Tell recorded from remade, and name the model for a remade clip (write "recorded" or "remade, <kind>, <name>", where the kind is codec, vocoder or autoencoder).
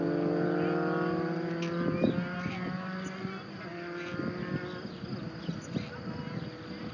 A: recorded